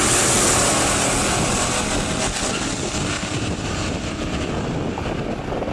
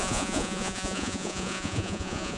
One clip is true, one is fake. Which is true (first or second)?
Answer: first